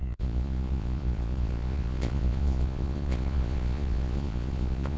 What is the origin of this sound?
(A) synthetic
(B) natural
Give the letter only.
A